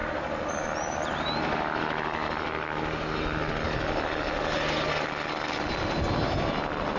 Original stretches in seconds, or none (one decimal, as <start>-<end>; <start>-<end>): 0.0-7.0